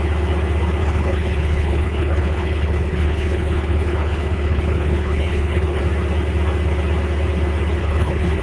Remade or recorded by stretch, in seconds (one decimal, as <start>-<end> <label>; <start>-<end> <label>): 0.0-0.8 recorded; 0.8-5.8 remade; 5.8-7.8 recorded; 7.8-8.4 remade